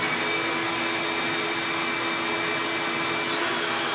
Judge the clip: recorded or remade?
recorded